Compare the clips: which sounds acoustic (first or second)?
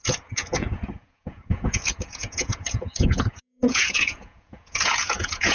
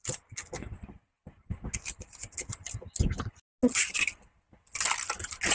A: second